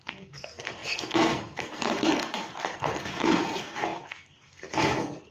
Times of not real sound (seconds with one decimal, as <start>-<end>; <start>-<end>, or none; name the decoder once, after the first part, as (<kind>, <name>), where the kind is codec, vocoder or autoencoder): 0.0-5.3 (codec, SNAC)